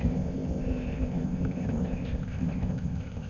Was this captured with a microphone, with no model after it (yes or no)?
no